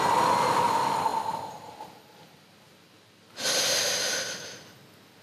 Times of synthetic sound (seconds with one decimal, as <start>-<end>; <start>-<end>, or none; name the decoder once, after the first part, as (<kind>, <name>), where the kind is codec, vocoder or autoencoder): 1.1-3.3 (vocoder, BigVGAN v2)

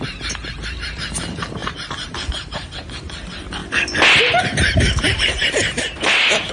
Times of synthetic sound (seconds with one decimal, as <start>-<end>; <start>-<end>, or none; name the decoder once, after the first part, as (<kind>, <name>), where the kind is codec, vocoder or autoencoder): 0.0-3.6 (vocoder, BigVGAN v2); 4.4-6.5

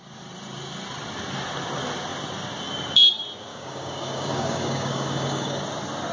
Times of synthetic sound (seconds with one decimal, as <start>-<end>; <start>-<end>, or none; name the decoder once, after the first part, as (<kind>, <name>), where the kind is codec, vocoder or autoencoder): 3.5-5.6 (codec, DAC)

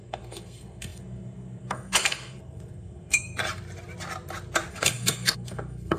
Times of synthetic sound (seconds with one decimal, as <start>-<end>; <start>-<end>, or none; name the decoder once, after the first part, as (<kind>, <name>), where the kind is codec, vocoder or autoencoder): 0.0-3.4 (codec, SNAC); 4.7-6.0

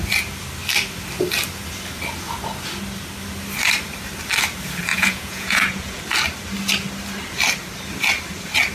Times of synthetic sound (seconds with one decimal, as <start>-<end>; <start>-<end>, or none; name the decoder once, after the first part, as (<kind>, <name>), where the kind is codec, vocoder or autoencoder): 4.9-6.0 (vocoder, Vocos)

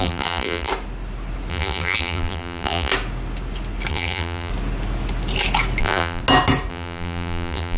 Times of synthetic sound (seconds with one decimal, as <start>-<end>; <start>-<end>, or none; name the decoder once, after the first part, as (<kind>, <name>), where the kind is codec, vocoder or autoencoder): 0.0-0.7 (vocoder, BigVGAN v2); 1.5-2.9; 3.9-4.5; 5.8-6.2; 6.7-7.8